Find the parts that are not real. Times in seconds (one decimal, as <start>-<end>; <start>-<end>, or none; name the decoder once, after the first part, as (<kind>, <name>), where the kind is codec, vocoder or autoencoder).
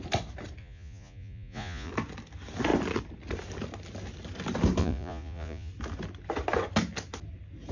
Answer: 0.6-1.9 (vocoder, Vocos); 4.8-5.7